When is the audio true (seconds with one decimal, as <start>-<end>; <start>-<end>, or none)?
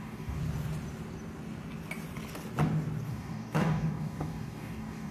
0.4-3.1